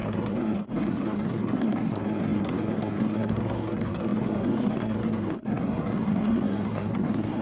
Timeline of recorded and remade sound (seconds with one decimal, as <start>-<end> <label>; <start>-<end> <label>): 0.0-7.4 remade